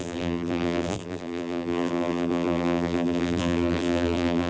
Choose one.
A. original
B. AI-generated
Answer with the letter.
B